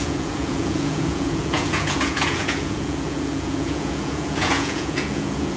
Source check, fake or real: fake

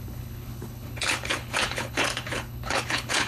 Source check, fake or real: fake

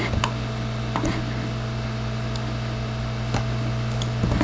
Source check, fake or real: real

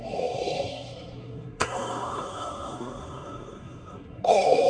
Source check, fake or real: fake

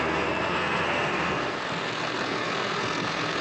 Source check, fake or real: fake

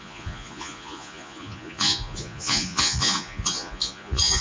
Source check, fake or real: fake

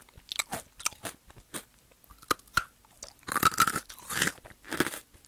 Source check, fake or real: real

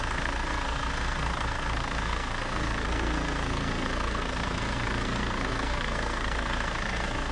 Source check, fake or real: fake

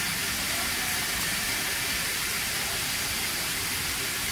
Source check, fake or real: real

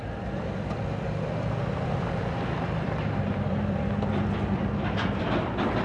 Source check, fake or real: fake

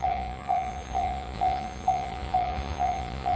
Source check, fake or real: fake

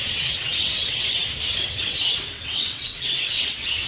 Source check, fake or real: fake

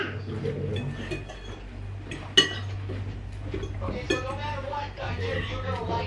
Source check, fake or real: real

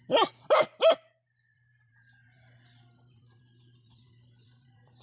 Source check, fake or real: fake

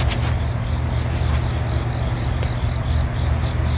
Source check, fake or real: real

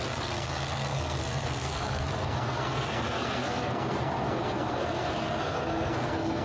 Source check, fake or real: fake